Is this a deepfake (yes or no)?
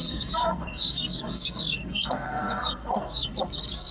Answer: yes